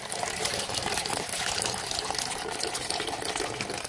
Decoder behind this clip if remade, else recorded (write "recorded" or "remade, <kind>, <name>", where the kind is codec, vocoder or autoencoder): recorded